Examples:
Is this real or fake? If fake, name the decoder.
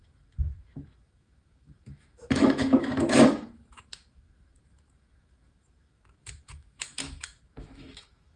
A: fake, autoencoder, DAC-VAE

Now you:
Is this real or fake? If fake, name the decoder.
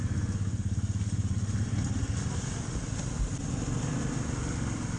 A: real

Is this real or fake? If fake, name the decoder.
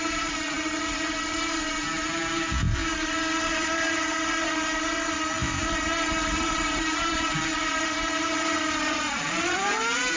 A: fake, vocoder, BigVGAN v2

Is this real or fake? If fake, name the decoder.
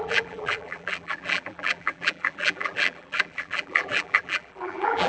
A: fake, vocoder, BigVGAN v2